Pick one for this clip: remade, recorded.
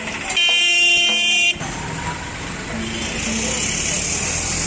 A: recorded